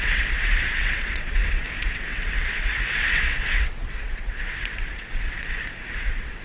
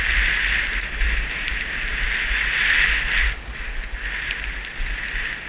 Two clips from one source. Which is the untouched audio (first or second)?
second